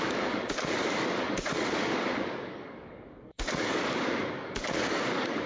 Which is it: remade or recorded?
remade